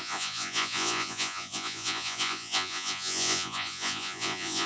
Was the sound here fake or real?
fake